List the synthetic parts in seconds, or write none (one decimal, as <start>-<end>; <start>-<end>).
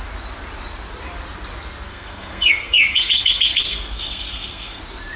1.9-4.8